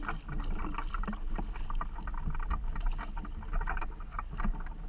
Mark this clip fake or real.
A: real